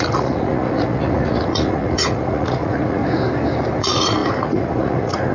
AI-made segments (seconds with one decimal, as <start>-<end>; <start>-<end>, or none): 0.0-3.0; 3.8-5.3